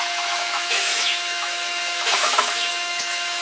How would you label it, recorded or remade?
remade